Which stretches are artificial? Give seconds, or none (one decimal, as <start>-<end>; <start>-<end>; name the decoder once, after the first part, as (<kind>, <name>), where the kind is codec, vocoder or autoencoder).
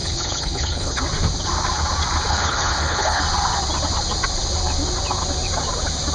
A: 0.0-1.0 (codec, HILCodec); 2.3-3.2